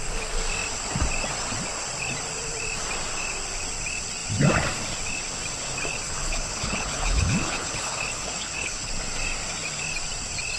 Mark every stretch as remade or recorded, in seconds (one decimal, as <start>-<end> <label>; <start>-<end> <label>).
0.0-5.9 recorded; 5.9-8.9 remade; 8.9-10.6 recorded